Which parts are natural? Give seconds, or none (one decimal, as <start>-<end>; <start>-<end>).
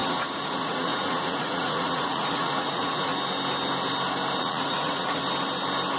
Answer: 3.1-4.4; 5.2-6.0